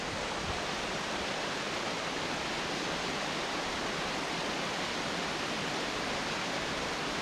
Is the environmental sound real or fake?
real